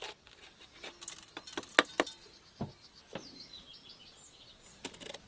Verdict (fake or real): real